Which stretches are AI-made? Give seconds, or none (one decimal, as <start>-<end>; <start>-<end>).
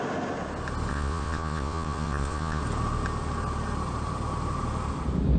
0.9-2.6